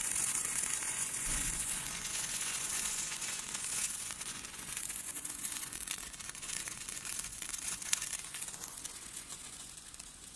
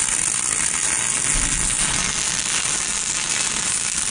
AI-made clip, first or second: first